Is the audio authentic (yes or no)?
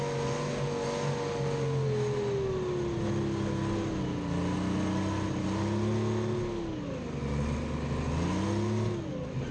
yes